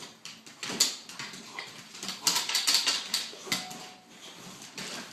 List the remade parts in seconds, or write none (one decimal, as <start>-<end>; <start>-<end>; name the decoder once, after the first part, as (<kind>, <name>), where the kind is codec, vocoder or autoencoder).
none